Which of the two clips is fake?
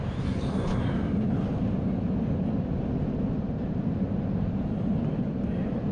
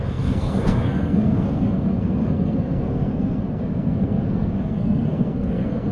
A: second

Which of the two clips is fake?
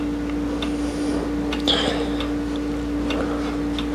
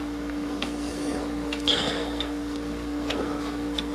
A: second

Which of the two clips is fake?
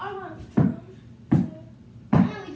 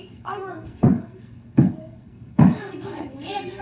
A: second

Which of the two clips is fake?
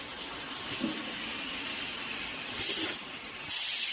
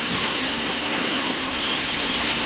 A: second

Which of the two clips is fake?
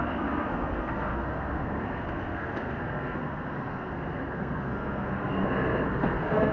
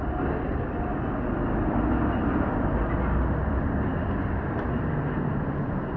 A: first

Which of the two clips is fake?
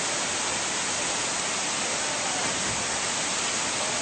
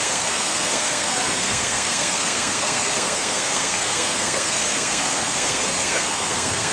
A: second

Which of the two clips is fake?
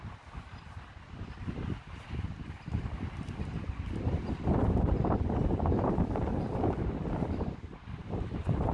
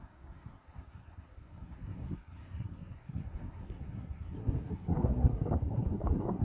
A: second